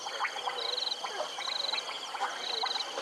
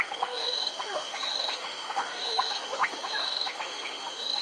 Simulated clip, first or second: second